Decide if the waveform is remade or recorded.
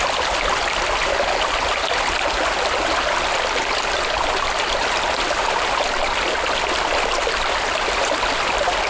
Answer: recorded